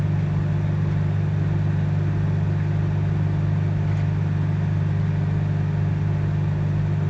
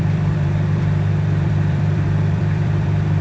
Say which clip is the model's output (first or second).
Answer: second